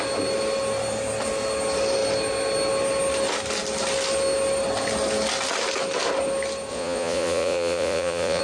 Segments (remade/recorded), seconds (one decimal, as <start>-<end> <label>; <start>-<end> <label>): 0.0-6.7 recorded; 6.7-8.4 remade